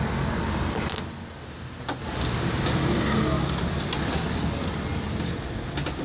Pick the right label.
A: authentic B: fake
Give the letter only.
A